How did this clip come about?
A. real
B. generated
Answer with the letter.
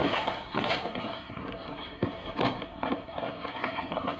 B